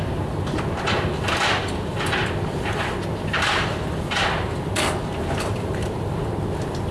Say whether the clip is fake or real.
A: real